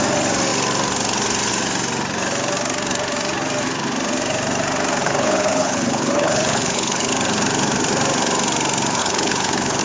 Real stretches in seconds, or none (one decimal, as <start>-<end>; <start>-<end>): 0.0-5.0; 7.1-9.0